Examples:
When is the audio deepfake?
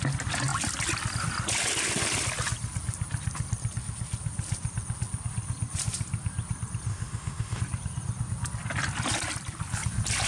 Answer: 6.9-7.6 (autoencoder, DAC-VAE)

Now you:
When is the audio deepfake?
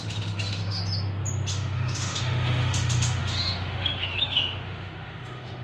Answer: 0.0-0.8 (autoencoder, DAC-VAE); 1.5-5.6